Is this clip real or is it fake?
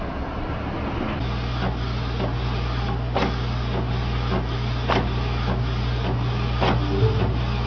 real